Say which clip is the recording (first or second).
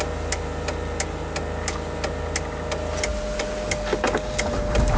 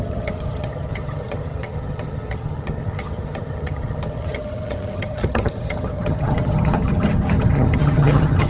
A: first